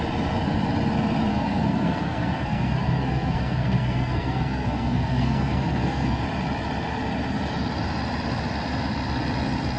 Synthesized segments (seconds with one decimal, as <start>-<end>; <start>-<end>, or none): 1.3-6.2

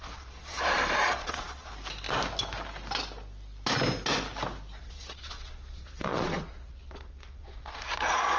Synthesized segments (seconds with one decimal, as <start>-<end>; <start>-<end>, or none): 0.0-1.7; 4.8-8.4

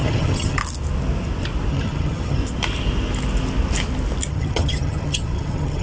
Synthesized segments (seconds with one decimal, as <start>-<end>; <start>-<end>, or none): 0.0-0.6; 1.7-2.4; 4.3-5.8

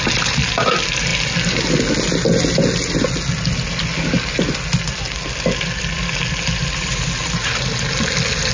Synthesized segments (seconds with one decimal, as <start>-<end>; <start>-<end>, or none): none

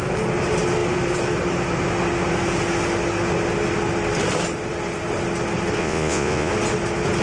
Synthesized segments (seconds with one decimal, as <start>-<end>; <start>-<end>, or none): 5.8-6.5

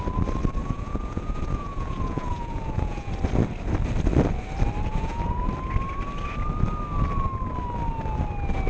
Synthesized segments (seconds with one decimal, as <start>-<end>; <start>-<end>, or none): 0.6-3.1; 4.9-5.5

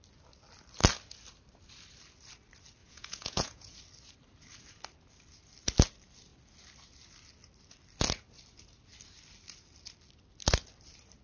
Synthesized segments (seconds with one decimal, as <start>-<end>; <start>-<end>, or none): 2.8-3.8

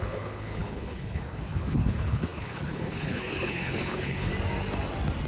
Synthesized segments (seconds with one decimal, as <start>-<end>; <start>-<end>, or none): 0.0-4.3